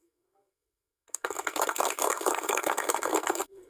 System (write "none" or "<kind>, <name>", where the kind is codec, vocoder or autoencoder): codec, SNAC